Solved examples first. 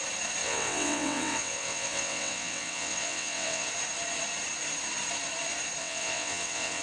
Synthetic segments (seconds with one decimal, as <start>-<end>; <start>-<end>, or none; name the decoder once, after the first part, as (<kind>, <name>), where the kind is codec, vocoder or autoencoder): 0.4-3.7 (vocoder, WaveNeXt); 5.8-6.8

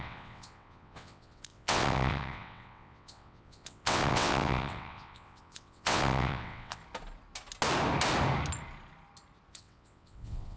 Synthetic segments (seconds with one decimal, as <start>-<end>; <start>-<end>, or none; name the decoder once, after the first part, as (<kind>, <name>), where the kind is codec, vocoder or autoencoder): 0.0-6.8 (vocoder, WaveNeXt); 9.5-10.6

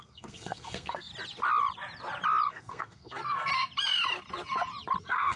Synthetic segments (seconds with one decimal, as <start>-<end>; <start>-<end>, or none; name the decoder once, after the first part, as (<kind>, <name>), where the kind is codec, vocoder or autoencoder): 0.0-1.1 (codec, SNAC); 2.5-3.5; 5.0-5.4

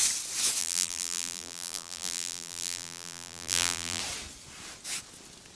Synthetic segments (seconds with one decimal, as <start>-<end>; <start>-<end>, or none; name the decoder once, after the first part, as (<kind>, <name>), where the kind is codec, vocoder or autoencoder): 0.6-4.0 (vocoder, BigVGAN v2)

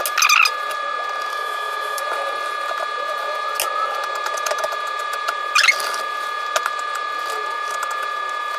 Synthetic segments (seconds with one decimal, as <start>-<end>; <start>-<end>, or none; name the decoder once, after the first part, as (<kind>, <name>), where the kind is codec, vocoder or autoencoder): 1.3-2.0 (autoencoder, DAC-VAE)